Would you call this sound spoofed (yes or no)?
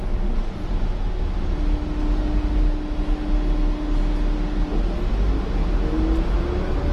no